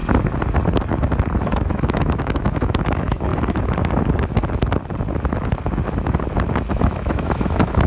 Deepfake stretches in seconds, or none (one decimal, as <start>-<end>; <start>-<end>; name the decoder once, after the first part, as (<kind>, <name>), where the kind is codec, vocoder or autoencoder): 1.4-3.3 (autoencoder, DAC-VAE); 6.7-7.9